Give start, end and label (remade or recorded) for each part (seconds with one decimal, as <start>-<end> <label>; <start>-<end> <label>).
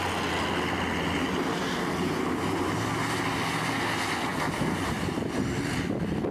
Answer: 0.0-6.3 recorded